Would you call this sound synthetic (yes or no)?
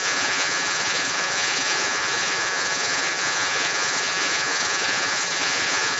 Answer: yes